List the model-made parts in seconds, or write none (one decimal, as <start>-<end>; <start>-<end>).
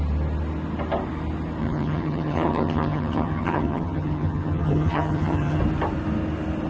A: 1.6-5.6